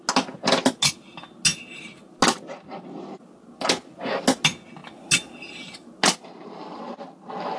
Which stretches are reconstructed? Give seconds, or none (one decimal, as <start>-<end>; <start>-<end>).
none